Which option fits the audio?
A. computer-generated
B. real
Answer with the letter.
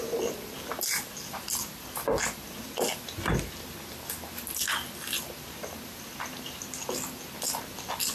B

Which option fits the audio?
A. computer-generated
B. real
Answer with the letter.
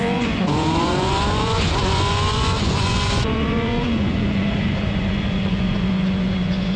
A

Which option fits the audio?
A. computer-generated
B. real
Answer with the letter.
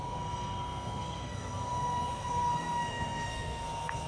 A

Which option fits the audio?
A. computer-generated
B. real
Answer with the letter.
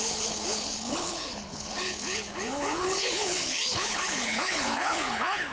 A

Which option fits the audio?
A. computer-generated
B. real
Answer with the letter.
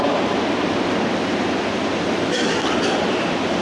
B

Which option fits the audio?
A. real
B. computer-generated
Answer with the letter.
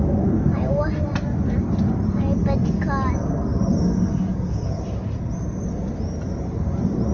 A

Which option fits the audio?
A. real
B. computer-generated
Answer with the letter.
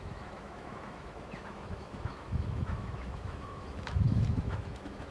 B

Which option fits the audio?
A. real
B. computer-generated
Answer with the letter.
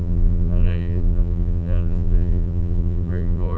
B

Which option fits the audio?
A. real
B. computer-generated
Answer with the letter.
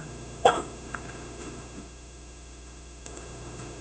B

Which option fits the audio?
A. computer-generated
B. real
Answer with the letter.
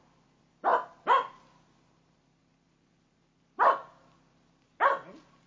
B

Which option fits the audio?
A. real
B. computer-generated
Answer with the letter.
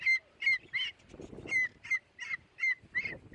A